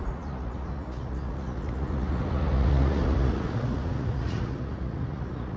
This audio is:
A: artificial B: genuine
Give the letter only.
A